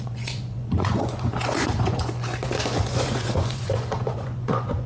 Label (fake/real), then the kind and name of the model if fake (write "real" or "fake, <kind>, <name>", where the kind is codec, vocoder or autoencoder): fake, vocoder, Vocos